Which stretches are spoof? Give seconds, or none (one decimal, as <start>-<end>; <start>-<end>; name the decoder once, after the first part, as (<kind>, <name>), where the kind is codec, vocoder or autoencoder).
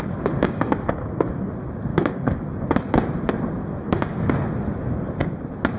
0.4-1.5 (codec, DAC); 1.9-2.4; 3.8-4.3